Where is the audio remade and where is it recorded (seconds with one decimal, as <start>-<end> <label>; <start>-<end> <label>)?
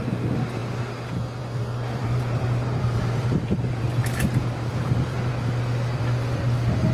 0.0-2.0 recorded; 2.0-5.3 remade; 5.3-6.9 recorded